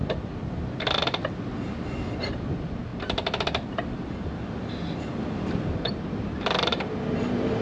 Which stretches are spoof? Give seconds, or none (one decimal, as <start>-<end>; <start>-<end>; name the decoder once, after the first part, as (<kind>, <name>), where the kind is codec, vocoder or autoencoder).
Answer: 0.0-0.4 (vocoder, BigVGAN v2); 2.2-2.9; 5.4-7.6